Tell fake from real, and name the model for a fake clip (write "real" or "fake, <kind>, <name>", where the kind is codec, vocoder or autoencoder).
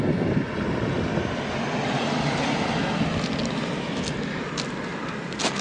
real